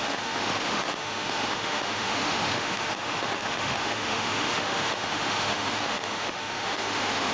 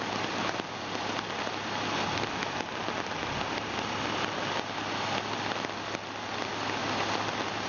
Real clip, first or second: second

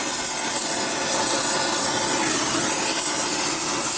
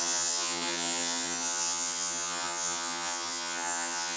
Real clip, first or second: first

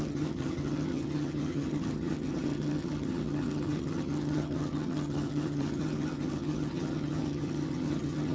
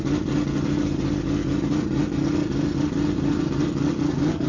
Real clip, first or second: second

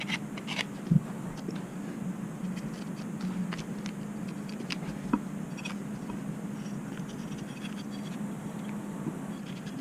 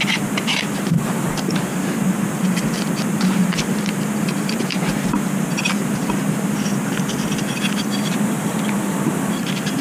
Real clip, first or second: first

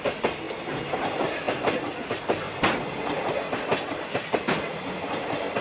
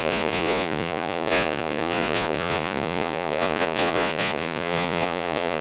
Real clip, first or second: first